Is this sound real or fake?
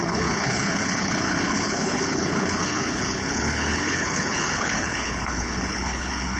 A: fake